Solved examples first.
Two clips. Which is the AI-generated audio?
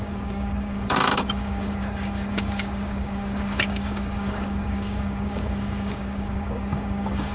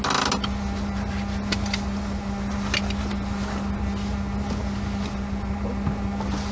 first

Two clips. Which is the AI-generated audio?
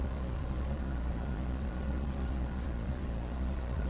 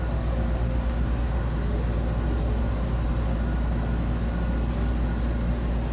first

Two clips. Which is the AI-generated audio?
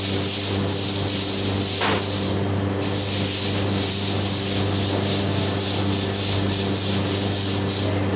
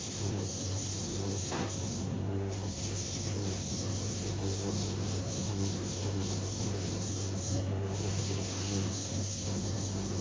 second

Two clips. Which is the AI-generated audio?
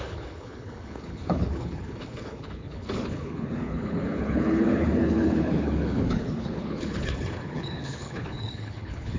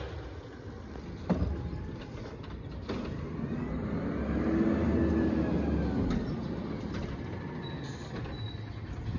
first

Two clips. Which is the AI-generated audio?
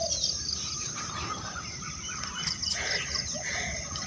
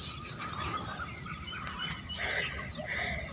first